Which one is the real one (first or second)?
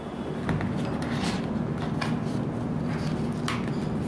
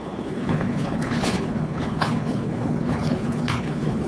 first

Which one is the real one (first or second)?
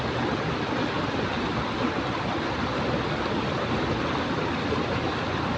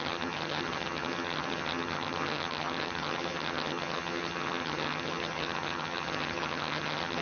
first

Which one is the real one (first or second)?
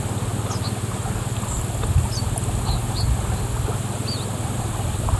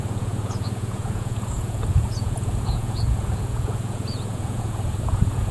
first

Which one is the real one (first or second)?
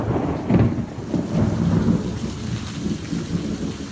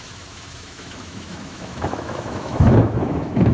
first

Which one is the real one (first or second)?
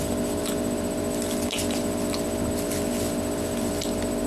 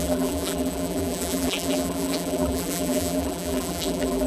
first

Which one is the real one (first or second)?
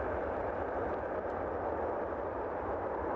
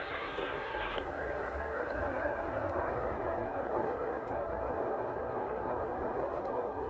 first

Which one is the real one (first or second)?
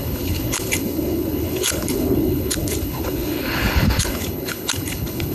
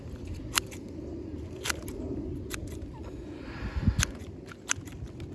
second